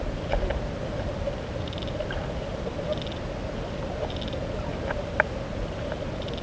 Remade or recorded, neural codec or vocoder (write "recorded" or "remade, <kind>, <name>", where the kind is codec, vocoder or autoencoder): recorded